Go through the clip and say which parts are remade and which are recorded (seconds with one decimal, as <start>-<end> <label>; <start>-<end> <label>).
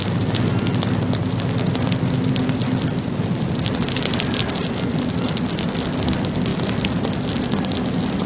0.0-8.3 recorded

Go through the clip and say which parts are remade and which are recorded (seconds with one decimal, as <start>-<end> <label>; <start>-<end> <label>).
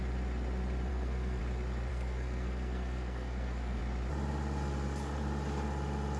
0.0-0.9 recorded; 0.9-1.4 remade; 1.4-1.9 recorded; 1.9-3.8 remade; 3.8-6.2 recorded